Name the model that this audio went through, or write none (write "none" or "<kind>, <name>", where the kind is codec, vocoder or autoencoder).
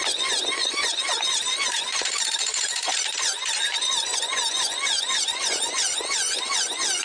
vocoder, Vocos